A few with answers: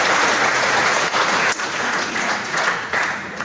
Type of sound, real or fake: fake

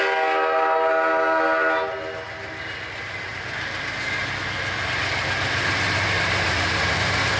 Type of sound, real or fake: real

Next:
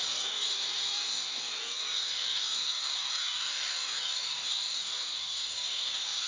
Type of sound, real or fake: fake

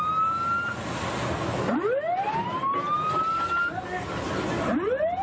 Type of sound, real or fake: real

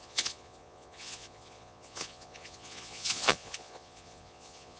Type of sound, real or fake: fake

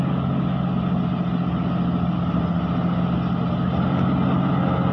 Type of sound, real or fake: real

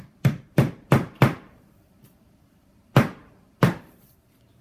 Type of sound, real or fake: fake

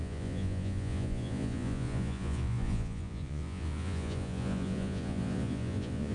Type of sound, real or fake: fake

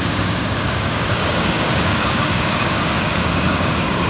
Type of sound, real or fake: fake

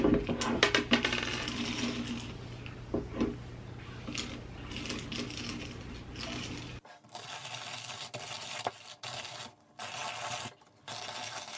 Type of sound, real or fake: real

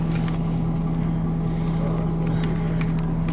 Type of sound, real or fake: real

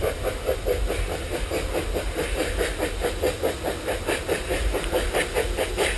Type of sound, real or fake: real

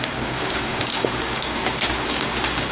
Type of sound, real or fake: fake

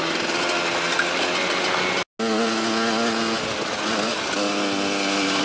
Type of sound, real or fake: real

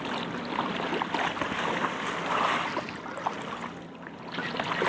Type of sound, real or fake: real